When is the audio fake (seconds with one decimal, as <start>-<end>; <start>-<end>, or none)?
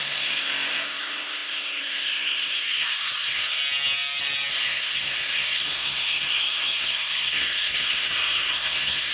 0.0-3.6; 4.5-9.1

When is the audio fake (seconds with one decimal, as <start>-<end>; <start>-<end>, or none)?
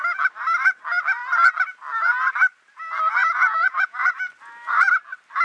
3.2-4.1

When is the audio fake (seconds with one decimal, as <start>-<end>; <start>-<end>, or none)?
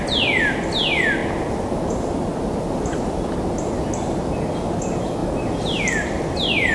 none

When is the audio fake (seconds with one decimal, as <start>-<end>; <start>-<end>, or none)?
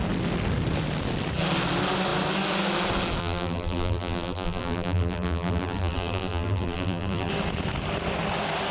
3.2-7.3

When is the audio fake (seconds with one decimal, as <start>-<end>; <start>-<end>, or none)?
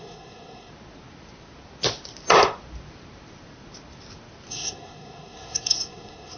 0.0-0.7; 4.5-6.4